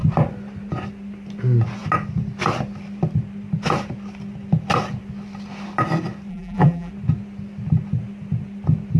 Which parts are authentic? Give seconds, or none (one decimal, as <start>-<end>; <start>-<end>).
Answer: 0.0-6.3; 6.9-9.0